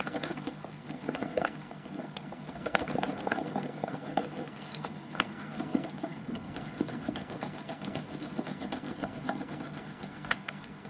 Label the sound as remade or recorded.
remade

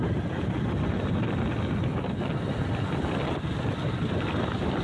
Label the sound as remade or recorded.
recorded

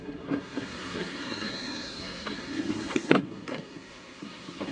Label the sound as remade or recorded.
remade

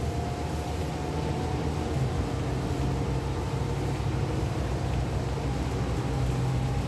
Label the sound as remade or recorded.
recorded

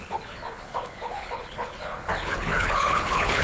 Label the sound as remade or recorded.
remade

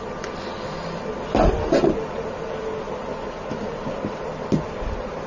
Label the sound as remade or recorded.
recorded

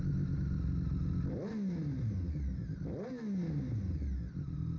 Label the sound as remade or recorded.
recorded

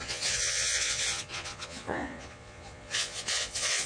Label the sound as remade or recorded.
remade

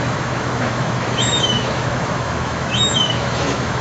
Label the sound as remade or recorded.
remade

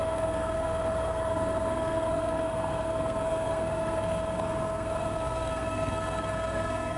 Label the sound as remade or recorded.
remade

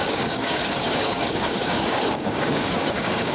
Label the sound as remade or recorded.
remade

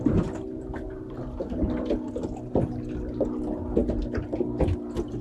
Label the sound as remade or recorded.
recorded